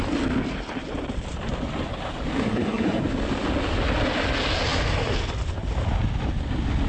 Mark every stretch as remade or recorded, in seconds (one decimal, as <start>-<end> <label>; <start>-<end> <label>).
0.0-2.4 recorded; 2.4-3.0 remade; 3.0-6.9 recorded